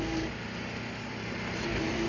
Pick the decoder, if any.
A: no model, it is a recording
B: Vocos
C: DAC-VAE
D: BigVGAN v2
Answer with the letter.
A